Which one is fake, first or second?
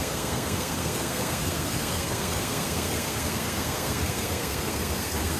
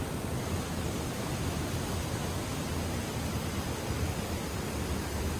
first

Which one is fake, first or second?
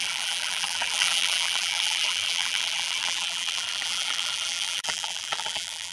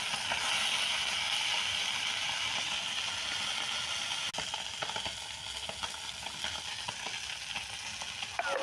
first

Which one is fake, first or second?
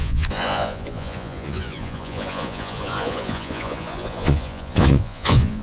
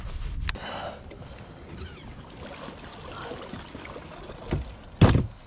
first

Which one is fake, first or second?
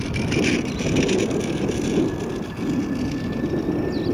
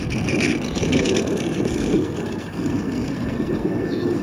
second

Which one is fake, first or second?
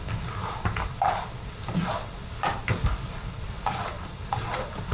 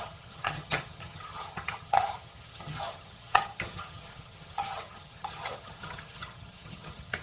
second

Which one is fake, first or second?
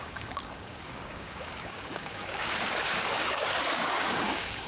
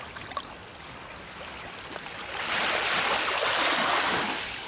first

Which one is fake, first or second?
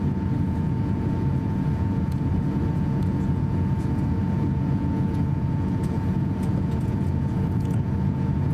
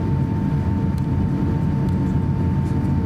first